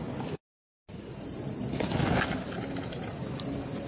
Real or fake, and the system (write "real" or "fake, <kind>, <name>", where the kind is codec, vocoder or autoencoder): real